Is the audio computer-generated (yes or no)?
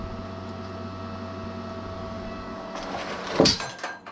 no